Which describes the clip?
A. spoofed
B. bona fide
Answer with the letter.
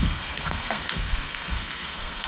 A